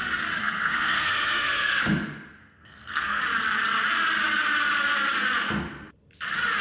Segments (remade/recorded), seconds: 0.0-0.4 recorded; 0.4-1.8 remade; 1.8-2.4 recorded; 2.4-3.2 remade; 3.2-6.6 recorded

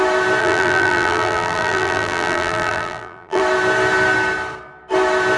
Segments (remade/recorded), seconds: 0.0-0.4 recorded; 0.4-3.4 remade; 3.4-5.4 recorded

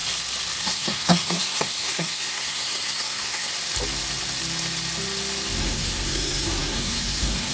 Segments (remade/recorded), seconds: 0.0-0.6 recorded; 0.6-3.5 remade; 3.5-5.6 recorded; 5.6-7.5 remade

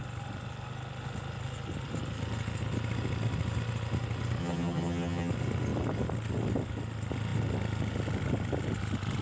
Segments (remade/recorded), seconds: 0.0-4.4 recorded; 4.4-5.3 remade; 5.3-9.2 recorded

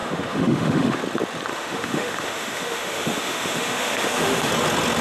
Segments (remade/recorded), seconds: 0.0-1.0 remade; 1.0-1.5 recorded; 1.5-4.5 remade; 4.5-5.0 recorded